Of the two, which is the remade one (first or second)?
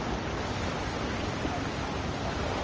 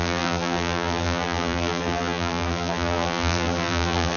second